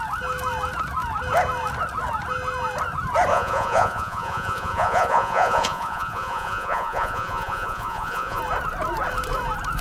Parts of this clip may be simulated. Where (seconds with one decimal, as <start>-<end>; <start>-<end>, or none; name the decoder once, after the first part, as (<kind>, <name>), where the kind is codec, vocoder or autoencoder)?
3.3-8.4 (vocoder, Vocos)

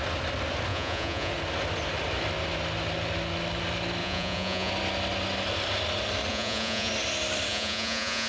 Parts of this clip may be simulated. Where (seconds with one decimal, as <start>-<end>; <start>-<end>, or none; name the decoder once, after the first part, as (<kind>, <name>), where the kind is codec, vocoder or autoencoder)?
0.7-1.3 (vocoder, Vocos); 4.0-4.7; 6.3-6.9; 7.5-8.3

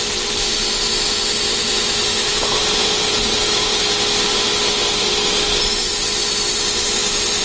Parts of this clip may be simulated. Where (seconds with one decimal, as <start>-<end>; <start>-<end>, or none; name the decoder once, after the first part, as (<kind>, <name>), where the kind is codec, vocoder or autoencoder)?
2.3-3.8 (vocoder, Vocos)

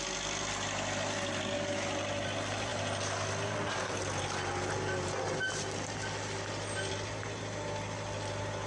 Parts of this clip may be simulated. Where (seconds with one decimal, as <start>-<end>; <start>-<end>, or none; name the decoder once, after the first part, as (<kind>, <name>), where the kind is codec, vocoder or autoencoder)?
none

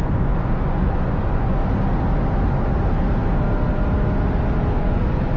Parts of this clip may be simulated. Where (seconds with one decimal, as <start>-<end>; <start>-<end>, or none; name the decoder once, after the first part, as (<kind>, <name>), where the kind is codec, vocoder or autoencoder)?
0.0-1.6 (vocoder, Vocos); 4.8-5.4

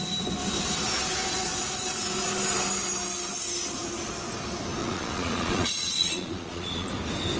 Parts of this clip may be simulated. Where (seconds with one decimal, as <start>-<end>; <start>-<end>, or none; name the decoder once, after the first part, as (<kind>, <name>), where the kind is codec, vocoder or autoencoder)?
4.8-6.9 (vocoder, Vocos)

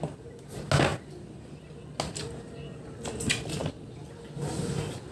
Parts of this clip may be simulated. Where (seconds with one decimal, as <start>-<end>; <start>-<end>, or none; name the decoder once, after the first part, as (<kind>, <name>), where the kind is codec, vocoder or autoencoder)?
none

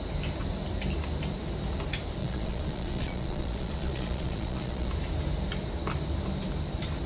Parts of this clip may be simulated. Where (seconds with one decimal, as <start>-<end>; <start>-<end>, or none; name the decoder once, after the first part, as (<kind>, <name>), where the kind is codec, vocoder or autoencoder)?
2.2-4.9 (vocoder, Vocos)